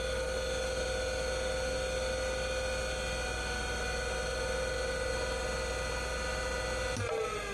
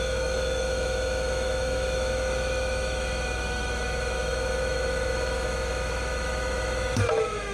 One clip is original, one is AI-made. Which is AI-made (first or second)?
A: second